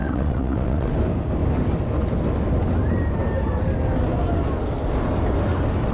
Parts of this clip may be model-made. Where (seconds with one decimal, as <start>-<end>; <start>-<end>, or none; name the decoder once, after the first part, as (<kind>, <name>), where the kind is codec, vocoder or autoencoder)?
0.0-0.9 (vocoder, WaveNeXt)